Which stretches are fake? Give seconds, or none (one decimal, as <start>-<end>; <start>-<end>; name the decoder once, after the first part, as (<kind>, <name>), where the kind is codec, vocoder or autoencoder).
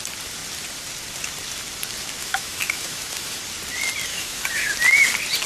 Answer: 2.2-3.4 (autoencoder, DAC-VAE); 4.1-4.7